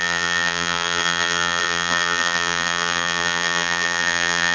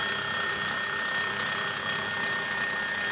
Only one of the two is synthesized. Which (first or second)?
first